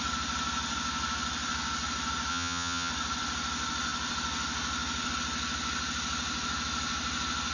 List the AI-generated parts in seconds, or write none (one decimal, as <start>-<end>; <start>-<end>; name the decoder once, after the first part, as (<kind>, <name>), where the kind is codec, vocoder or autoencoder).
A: 2.3-2.9 (vocoder, HiFi-GAN)